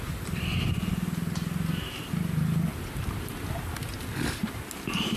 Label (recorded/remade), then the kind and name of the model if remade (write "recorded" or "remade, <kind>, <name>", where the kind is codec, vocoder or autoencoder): recorded